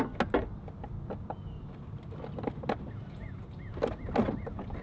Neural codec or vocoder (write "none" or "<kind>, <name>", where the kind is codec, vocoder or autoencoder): none